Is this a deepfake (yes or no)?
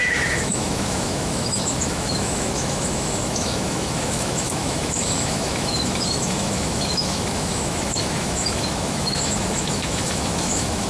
yes